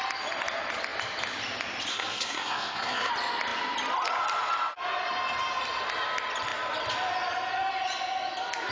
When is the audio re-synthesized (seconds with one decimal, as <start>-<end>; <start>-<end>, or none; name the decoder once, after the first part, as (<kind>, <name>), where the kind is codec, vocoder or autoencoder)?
1.9-3.1 (codec, SNAC)